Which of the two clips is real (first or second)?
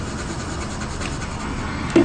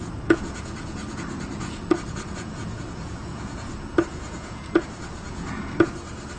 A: first